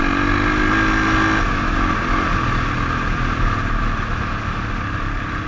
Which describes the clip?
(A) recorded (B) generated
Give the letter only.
A